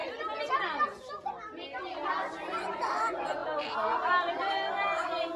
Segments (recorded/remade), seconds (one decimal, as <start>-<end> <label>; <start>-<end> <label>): 0.0-0.5 remade; 0.5-1.8 recorded; 1.8-2.8 remade; 2.8-5.4 recorded